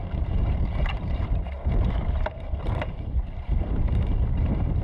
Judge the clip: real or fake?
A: fake